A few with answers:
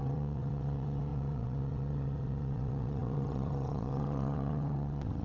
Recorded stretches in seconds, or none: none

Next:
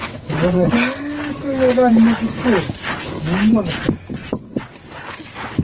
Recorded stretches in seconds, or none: 0.7-4.2; 4.7-5.6

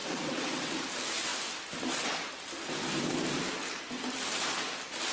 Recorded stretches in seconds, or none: 0.7-5.1

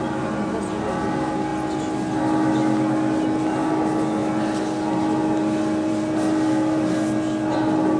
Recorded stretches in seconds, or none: 0.0-8.0

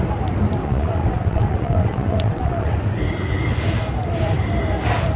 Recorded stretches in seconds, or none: 0.0-0.6; 2.8-5.2